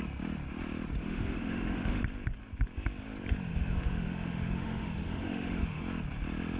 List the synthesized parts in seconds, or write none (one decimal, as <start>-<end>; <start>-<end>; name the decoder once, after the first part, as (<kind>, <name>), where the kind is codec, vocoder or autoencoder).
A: 1.0-2.0 (autoencoder, DAC-VAE); 3.5-5.8